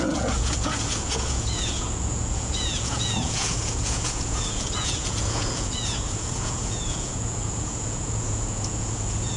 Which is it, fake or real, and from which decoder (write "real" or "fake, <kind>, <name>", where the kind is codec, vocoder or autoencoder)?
fake, vocoder, Vocos